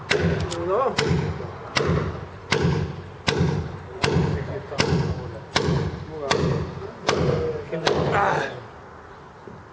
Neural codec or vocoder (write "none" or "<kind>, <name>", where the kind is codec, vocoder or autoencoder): none